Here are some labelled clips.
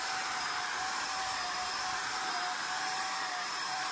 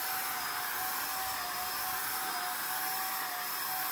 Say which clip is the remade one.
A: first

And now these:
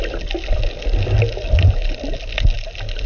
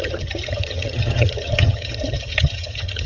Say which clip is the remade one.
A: second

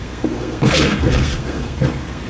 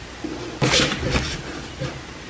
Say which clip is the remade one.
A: first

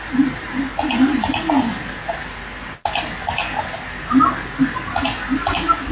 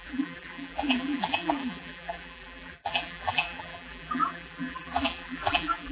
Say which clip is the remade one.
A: second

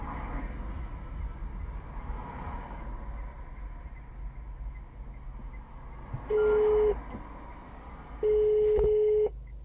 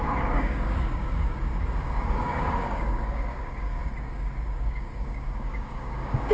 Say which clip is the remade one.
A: second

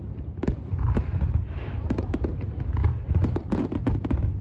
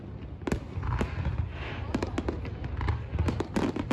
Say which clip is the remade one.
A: first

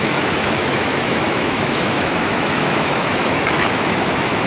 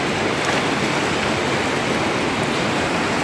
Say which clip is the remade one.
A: first